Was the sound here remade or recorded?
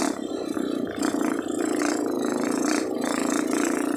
recorded